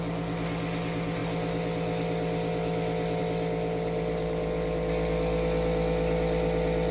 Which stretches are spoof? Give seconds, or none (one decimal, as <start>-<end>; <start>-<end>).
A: none